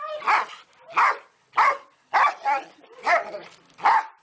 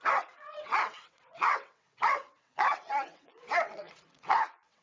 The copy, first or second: second